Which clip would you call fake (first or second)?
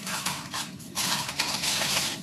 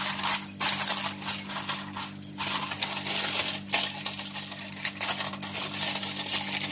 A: first